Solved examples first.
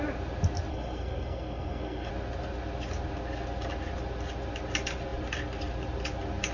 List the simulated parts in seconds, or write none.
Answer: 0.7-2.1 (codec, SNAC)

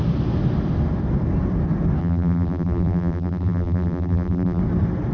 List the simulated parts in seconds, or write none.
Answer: 2.0-4.6 (vocoder, BigVGAN v2)